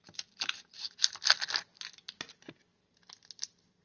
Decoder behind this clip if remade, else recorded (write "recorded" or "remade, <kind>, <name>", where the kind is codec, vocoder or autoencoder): recorded